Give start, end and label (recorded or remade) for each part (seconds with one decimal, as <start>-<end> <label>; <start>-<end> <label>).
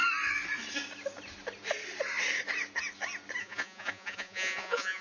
0.0-3.4 recorded; 3.4-5.0 remade